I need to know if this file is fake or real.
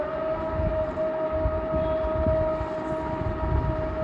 real